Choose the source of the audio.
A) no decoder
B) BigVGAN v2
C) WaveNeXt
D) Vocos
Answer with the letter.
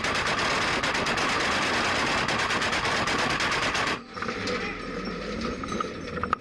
A